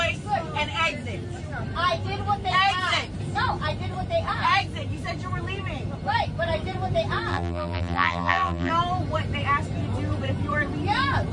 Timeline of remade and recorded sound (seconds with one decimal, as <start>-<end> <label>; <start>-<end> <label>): 0.0-7.3 recorded; 7.3-8.7 remade; 8.7-11.3 recorded

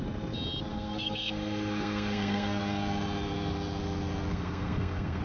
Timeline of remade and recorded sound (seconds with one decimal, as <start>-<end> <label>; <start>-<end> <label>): 0.0-0.7 recorded; 0.7-2.6 remade; 2.6-4.3 recorded; 4.3-5.2 remade

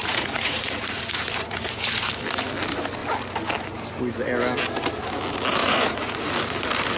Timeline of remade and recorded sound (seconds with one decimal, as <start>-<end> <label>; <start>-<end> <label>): 0.0-2.1 remade; 2.1-5.6 recorded; 5.6-6.3 remade; 6.3-7.0 recorded